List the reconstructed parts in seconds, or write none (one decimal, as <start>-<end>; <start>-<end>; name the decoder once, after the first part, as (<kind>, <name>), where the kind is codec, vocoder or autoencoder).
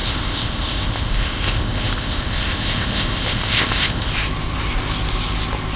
0.0-4.1 (codec, ZipCodec)